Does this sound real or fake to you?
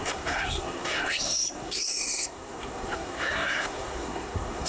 fake